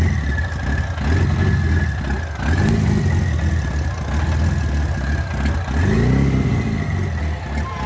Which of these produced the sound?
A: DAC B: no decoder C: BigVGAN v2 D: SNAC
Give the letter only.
B